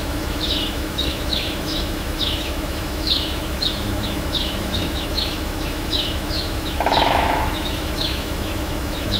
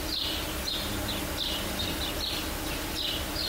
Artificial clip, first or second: first